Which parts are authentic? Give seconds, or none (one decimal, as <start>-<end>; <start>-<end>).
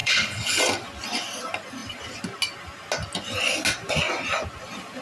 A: 0.6-5.0